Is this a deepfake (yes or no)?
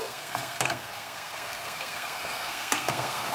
yes